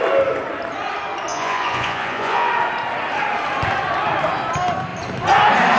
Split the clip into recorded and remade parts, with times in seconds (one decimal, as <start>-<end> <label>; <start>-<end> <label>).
0.0-1.3 recorded; 1.3-2.5 remade; 2.5-5.8 recorded